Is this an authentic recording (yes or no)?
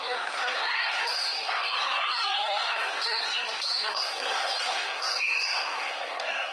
no